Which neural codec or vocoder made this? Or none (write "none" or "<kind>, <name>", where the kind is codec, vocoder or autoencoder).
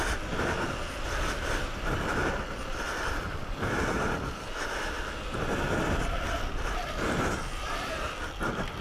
vocoder, BigVGAN v2